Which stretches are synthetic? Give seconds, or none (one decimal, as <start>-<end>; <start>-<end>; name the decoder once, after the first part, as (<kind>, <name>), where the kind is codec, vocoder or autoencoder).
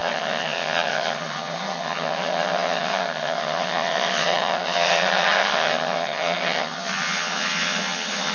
0.0-8.3 (vocoder, HiFi-GAN)